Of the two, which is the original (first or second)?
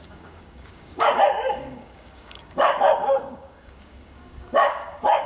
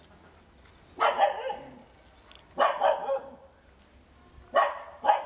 second